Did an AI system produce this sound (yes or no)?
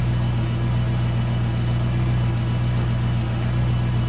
no